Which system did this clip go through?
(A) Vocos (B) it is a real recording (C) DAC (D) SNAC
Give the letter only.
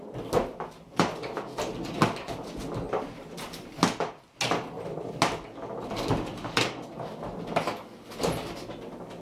B